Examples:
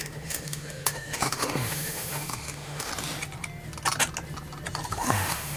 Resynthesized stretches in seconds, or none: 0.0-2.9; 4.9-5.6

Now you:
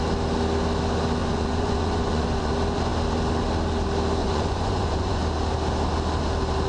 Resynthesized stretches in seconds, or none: 1.2-2.5; 4.2-5.2

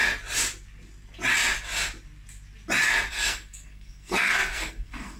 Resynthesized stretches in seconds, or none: 3.1-5.2